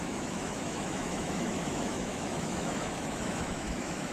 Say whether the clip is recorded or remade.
remade